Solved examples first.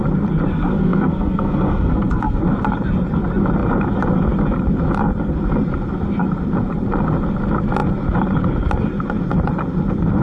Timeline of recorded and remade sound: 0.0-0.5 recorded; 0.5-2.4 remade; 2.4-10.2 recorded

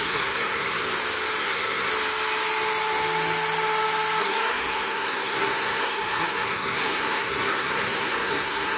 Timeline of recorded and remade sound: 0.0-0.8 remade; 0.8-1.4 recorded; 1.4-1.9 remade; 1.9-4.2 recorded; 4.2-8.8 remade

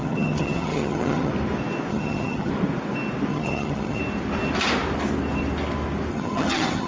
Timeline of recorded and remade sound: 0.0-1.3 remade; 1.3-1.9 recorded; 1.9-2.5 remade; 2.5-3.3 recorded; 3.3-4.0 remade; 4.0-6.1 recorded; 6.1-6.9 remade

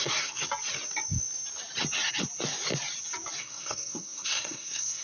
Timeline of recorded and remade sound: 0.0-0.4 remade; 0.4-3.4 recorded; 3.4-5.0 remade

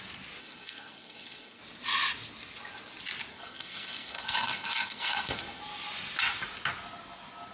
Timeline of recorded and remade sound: 0.0-0.4 recorded; 0.4-1.6 remade; 1.6-3.3 recorded; 3.3-5.6 remade; 5.6-7.5 recorded

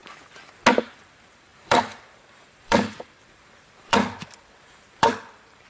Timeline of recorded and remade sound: 0.0-0.7 recorded; 0.7-5.7 remade

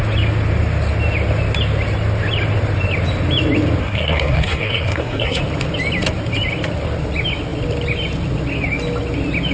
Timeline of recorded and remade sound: 0.0-3.8 recorded; 3.8-5.4 remade; 5.4-9.5 recorded